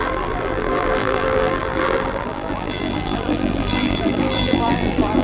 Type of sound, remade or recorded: remade